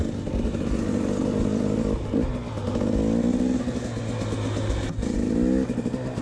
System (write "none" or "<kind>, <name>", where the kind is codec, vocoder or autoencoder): none